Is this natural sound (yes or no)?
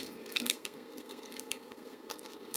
no